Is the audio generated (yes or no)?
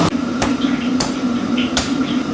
yes